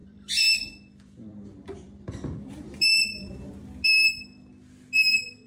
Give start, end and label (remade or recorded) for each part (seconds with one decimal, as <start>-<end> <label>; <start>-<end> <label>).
0.0-3.3 remade; 3.3-5.5 recorded